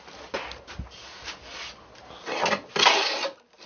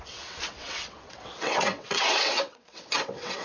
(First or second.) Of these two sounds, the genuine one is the first